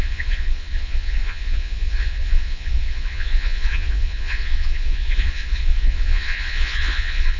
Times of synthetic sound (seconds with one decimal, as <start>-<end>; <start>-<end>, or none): 0.0-7.4